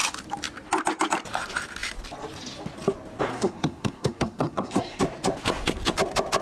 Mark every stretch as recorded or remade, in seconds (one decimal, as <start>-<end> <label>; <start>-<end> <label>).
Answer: 0.0-3.3 recorded; 3.3-5.0 remade; 5.0-6.4 recorded